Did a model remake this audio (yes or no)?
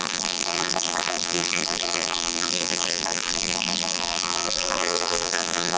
yes